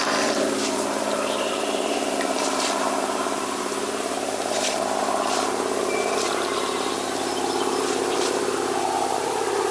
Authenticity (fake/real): fake